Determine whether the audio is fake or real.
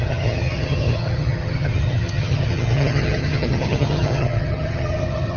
fake